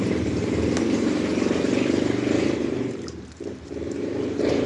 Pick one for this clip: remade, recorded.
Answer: remade